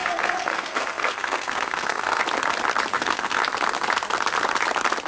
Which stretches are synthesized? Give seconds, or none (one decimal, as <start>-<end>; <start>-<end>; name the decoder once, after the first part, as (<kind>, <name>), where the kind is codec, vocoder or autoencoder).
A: 0.0-2.2 (codec, SNAC); 2.9-3.4